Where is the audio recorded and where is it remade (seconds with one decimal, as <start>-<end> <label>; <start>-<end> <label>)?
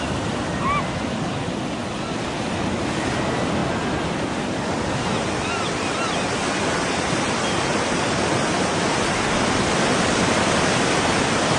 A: 0.0-11.6 recorded